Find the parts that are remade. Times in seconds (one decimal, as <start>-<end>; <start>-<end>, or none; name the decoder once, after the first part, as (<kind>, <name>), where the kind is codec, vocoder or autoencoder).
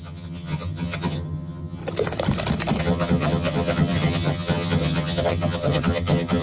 0.0-1.8 (vocoder, HiFi-GAN); 2.8-6.4